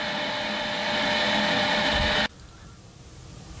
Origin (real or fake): real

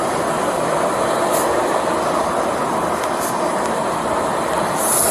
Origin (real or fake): real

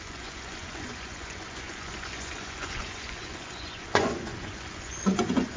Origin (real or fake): fake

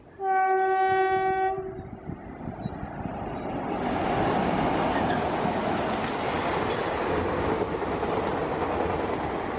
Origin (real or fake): real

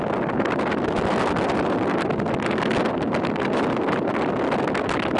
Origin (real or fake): real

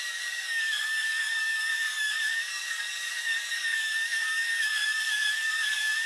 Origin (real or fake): fake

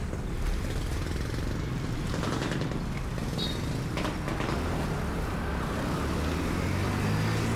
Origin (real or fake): real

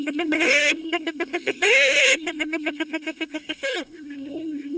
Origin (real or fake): fake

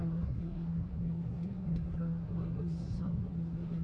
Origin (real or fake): fake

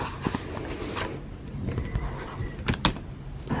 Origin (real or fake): real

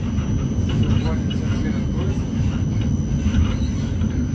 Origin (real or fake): real